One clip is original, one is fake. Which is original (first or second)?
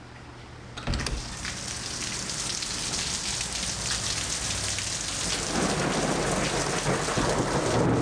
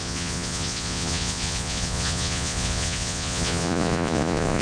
first